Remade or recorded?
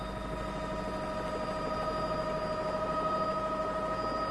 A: recorded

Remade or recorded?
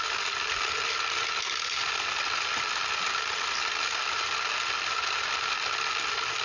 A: recorded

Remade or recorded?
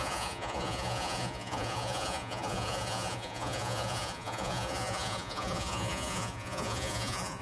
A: remade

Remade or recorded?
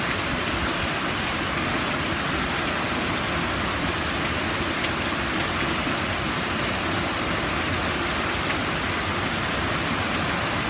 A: recorded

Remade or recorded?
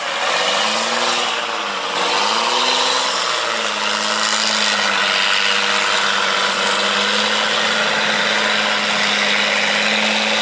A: recorded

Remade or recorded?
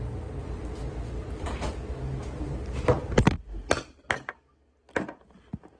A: recorded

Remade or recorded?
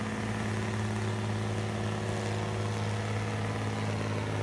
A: recorded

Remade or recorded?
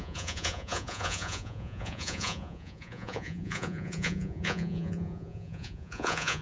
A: remade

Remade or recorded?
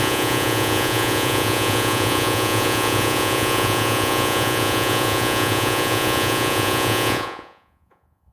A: remade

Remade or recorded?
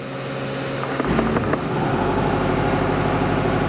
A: recorded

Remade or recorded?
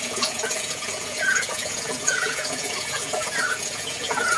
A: remade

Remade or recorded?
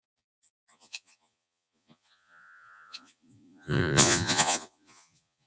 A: remade